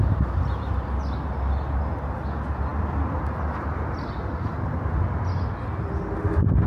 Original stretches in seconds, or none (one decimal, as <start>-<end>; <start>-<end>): 0.0-6.7